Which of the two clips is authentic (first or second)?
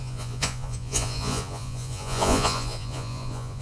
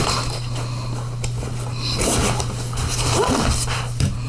second